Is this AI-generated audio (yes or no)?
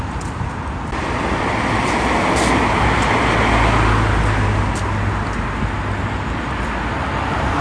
no